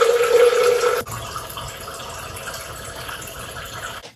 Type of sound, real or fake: real